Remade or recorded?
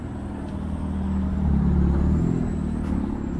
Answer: recorded